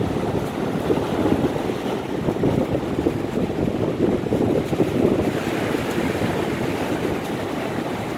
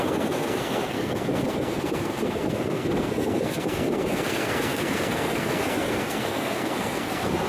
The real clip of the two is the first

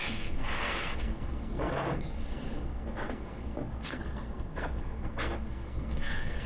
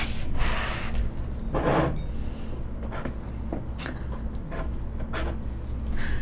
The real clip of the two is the second